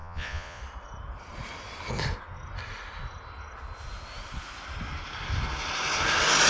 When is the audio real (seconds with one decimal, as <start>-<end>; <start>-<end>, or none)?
0.6-6.5